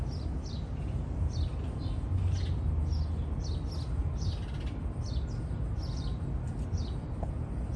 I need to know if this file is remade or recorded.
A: recorded